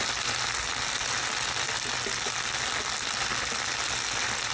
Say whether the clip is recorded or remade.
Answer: recorded